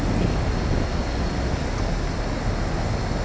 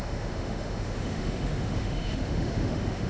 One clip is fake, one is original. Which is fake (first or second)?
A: second